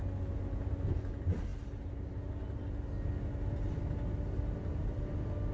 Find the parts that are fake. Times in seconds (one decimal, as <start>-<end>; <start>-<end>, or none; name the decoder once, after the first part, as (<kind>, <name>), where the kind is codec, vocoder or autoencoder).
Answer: none